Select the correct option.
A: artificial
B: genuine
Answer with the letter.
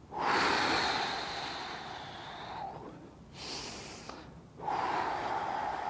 B